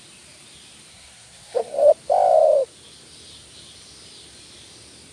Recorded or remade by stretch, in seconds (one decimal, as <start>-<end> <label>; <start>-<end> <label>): 0.0-0.9 recorded; 0.9-1.9 remade; 1.9-5.1 recorded